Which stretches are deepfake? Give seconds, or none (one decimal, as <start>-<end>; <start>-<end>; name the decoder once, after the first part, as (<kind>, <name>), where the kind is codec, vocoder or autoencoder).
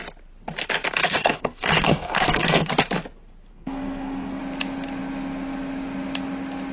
1.0-2.7 (codec, SNAC); 3.5-4.4